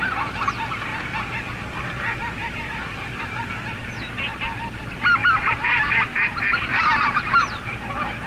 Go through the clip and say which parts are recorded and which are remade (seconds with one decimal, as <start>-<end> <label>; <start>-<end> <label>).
0.0-2.2 recorded; 2.2-3.4 remade; 3.4-5.2 recorded; 5.2-6.1 remade; 6.1-6.7 recorded; 6.7-7.3 remade; 7.3-8.3 recorded